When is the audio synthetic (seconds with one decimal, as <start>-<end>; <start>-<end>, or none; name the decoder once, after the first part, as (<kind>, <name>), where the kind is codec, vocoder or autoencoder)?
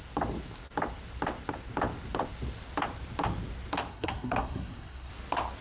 3.9-5.1 (codec, SNAC)